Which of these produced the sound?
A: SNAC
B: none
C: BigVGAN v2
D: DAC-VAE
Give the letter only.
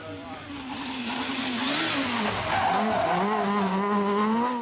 B